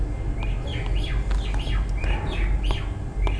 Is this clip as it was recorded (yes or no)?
yes